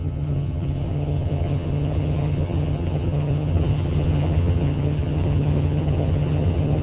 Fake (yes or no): yes